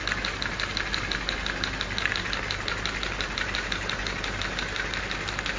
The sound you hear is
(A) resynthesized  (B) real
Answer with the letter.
B